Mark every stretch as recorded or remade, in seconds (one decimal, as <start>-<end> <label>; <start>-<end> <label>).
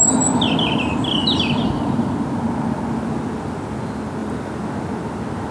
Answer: 0.0-5.5 recorded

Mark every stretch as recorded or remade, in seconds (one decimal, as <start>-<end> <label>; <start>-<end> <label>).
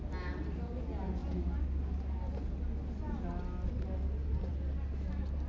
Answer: 0.0-5.5 recorded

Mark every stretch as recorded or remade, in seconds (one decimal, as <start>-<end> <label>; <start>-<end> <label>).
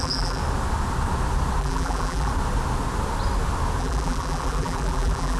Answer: 0.0-0.4 remade; 0.4-1.6 recorded; 1.6-2.3 remade; 2.3-3.8 recorded; 3.8-5.4 remade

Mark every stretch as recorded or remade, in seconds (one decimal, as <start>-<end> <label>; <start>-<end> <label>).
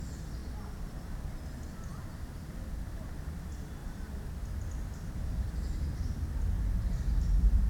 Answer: 0.0-0.4 recorded; 0.4-0.9 remade; 0.9-1.9 recorded; 1.9-2.6 remade; 2.6-3.8 recorded; 3.8-5.7 remade; 5.7-7.7 recorded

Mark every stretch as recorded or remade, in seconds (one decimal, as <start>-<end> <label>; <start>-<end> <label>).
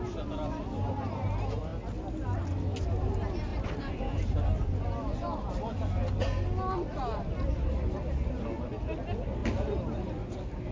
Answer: 0.0-3.5 recorded; 3.5-4.4 remade; 4.4-9.4 recorded; 9.4-10.1 remade; 10.1-10.7 recorded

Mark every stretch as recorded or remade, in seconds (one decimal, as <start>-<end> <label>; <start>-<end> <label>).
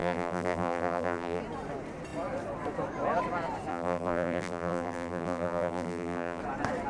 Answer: 0.0-1.4 remade; 1.4-3.7 recorded; 3.7-6.4 remade; 6.4-6.9 recorded